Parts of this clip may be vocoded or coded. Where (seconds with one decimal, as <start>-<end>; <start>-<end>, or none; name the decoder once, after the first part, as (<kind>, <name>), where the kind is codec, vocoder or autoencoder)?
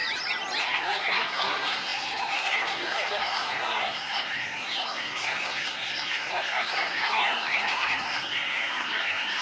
0.6-9.4 (codec, SNAC)